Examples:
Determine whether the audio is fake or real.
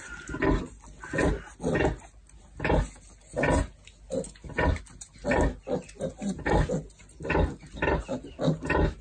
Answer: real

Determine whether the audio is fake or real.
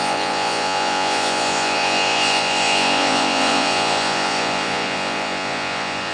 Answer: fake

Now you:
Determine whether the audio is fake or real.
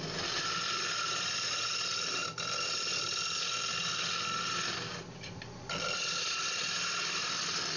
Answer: real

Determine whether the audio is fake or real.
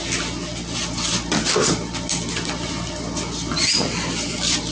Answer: real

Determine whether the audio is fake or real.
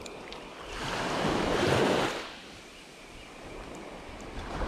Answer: real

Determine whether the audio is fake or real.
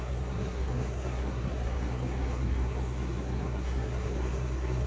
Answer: fake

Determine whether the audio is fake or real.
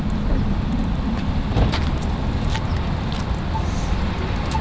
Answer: real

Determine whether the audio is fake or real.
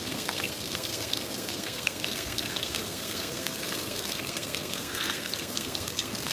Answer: fake